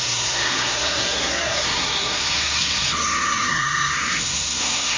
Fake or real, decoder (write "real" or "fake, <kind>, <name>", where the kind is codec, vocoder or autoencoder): fake, codec, SNAC